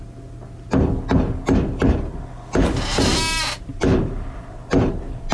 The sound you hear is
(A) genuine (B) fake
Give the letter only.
A